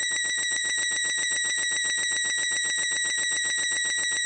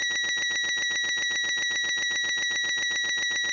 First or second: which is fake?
first